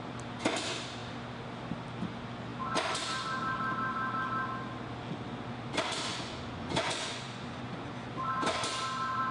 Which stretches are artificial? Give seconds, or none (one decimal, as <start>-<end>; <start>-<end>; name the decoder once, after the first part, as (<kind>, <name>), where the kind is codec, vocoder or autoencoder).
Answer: 6.1-8.1 (vocoder, Vocos)